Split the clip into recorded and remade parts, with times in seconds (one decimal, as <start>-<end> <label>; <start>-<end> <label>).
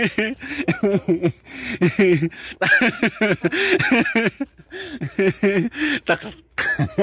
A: 0.0-7.0 recorded